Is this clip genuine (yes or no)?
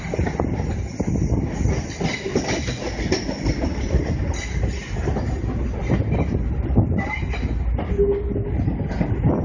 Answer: yes